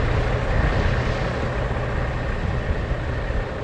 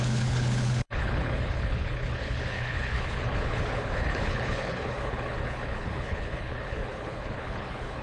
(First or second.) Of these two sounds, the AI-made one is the second